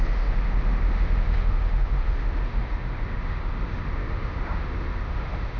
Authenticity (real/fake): fake